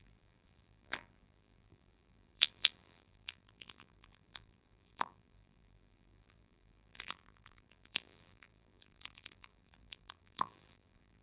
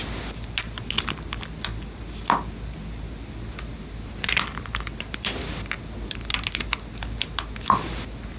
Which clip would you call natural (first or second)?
second